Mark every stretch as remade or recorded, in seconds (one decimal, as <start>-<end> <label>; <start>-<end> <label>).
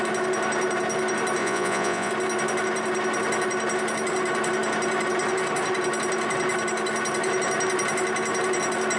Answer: 0.0-1.4 recorded; 1.4-2.1 remade; 2.1-9.0 recorded